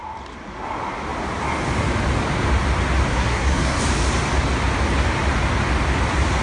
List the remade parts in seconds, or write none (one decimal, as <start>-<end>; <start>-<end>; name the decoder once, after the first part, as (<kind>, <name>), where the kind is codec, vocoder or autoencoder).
3.1-3.8 (codec, SNAC)